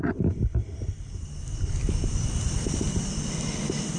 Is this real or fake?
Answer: real